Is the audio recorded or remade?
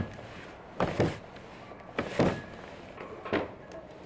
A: recorded